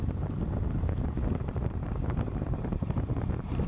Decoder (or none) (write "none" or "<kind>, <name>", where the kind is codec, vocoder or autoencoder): vocoder, BigVGAN v2